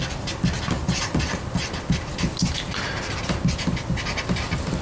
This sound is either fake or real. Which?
real